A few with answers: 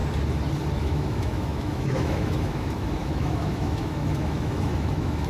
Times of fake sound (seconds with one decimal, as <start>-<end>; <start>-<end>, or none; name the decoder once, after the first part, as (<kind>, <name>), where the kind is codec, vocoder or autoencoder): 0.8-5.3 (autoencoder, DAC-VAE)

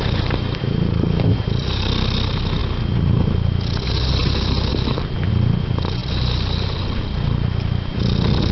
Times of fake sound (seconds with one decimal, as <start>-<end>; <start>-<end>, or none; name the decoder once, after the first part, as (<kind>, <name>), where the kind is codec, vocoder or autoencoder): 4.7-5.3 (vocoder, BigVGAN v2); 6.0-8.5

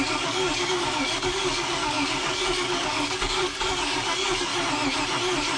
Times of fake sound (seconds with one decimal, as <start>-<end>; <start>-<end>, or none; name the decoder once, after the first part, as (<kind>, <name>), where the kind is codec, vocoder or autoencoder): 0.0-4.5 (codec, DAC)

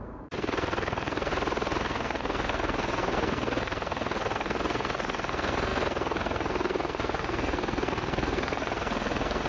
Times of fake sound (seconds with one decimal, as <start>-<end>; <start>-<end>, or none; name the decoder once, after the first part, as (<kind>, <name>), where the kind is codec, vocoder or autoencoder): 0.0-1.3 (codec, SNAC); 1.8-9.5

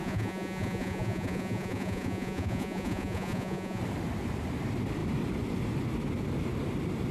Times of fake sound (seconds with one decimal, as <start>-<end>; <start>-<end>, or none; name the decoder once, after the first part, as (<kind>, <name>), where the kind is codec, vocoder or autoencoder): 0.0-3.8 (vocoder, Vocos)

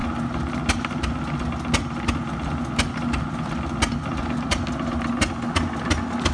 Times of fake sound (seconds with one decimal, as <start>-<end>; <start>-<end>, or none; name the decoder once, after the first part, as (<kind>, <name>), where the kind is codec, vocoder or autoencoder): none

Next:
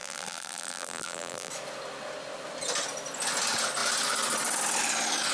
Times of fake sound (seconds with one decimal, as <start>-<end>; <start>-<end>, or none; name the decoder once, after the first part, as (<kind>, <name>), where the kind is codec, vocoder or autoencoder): 0.0-1.5 (vocoder, BigVGAN v2)